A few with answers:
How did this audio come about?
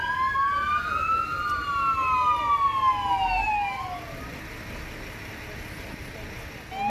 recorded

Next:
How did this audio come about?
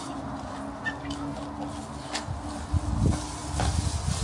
recorded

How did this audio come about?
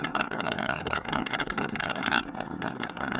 remade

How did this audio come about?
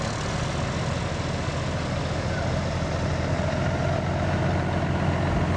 recorded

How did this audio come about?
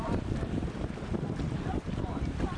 recorded